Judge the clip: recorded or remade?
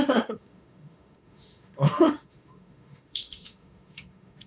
remade